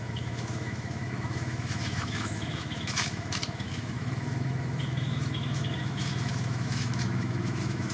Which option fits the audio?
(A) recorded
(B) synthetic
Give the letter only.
B